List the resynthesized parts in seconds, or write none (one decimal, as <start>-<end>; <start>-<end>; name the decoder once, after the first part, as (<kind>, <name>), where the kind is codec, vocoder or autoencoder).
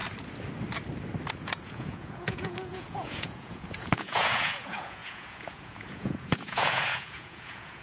1.3-7.8 (vocoder, Vocos)